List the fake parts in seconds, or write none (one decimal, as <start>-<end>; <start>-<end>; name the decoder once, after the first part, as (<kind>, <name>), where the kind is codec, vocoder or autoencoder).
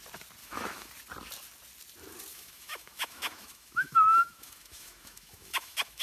0.4-0.9 (autoencoder, DAC-VAE); 2.3-6.0